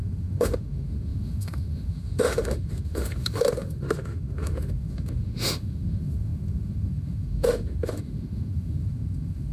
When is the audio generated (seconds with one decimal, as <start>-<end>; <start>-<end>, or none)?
0.0-9.5